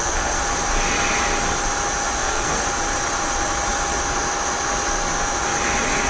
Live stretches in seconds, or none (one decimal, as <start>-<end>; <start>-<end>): 0.4-2.2; 2.6-6.1